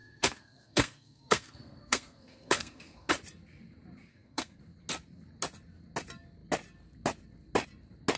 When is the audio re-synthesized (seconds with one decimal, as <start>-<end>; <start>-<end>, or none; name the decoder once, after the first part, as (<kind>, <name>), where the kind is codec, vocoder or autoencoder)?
0.0-3.1 (codec, SNAC); 4.1-4.6